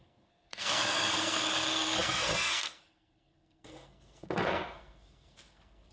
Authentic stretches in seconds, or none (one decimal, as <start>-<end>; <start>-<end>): none